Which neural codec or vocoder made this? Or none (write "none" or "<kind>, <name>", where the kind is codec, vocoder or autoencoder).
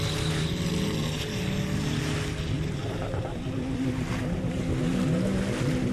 none